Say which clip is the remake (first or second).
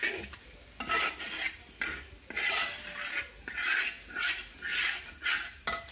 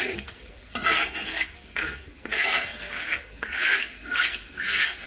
second